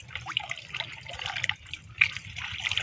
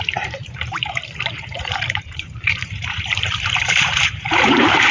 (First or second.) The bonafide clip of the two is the first